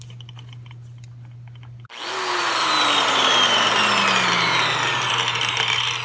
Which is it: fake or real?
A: real